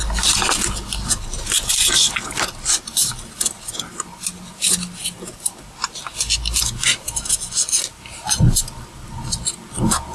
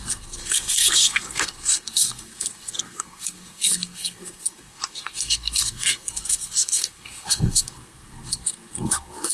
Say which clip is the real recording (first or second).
first